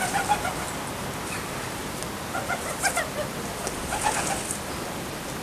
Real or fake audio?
real